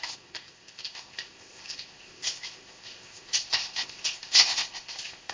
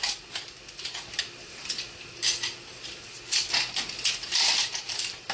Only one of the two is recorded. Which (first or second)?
second